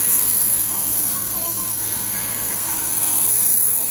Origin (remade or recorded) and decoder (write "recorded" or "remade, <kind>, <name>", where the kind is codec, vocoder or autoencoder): remade, codec, SNAC